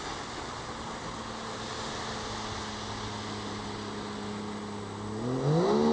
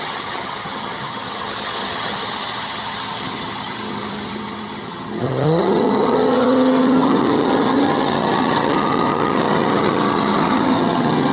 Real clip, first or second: first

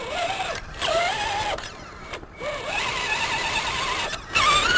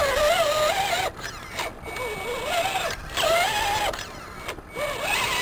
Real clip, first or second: second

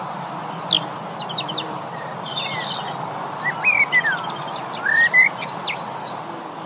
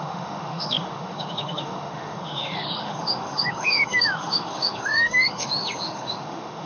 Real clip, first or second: first